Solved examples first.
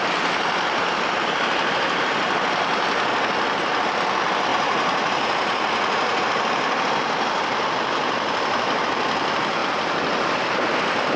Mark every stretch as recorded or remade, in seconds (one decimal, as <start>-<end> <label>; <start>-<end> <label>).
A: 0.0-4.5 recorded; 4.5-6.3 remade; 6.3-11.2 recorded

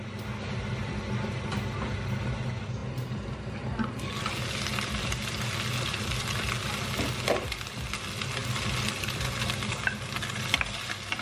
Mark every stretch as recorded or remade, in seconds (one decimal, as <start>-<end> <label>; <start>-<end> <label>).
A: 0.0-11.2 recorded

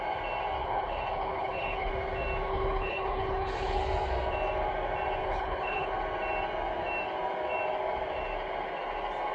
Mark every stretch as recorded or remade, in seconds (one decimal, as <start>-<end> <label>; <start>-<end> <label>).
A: 0.0-0.6 recorded; 0.6-1.9 remade; 1.9-2.5 recorded; 2.5-3.8 remade; 3.8-5.2 recorded; 5.2-5.9 remade; 5.9-9.3 recorded